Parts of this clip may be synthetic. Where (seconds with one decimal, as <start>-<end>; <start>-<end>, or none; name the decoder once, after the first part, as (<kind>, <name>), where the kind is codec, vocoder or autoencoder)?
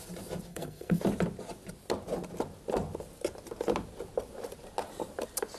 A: 0.5-1.0 (codec, SNAC)